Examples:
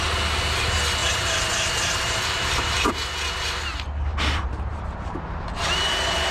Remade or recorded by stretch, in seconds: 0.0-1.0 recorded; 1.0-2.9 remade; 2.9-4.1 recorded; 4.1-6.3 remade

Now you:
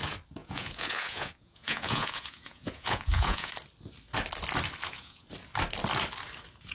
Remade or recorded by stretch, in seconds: 0.0-0.4 recorded; 0.4-3.5 remade; 3.5-4.8 recorded; 4.8-5.3 remade; 5.3-6.7 recorded

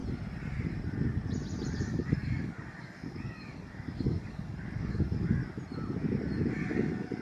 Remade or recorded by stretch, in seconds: 0.0-1.7 recorded; 1.7-5.4 remade; 5.4-6.5 recorded; 6.5-7.2 remade

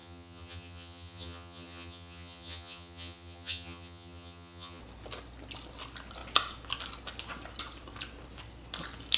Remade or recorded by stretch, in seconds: 0.0-4.8 remade; 4.8-9.2 recorded